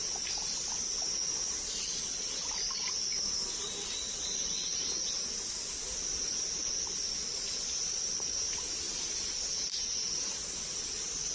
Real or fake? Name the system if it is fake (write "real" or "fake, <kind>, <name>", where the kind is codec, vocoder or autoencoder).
real